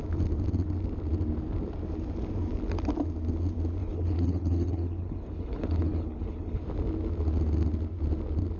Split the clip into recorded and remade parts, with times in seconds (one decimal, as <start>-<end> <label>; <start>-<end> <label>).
0.0-3.8 recorded; 3.8-6.6 remade; 6.6-8.6 recorded